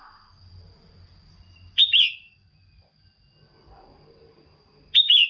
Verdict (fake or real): real